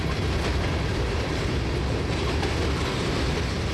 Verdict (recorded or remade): recorded